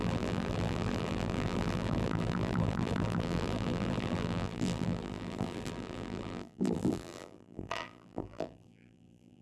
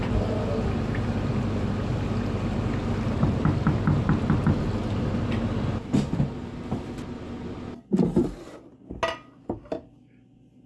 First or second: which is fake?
first